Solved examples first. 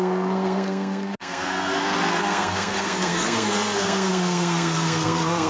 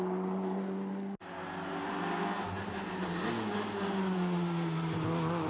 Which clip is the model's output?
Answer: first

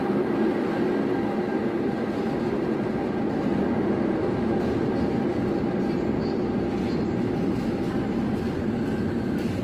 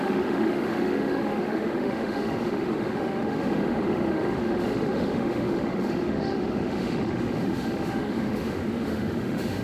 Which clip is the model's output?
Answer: second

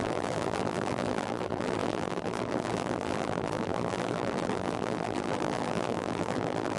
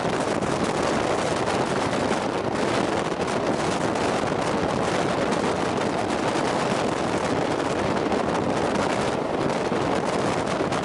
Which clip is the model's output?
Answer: first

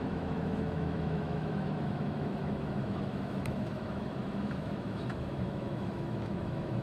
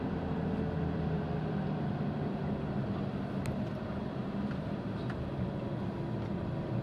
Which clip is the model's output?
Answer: first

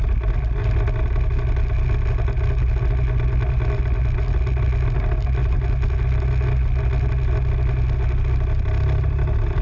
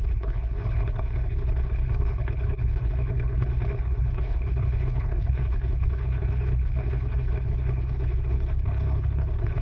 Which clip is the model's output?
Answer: second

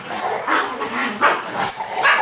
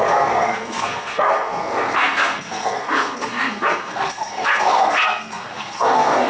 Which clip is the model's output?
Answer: second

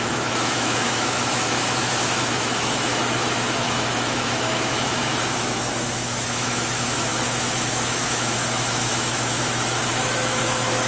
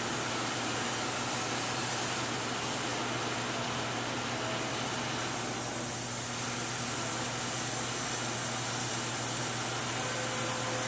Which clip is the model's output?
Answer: first